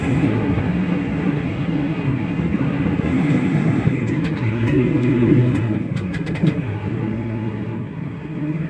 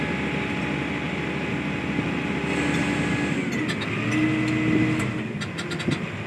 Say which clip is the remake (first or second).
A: first